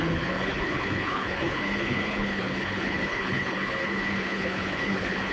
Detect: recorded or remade remade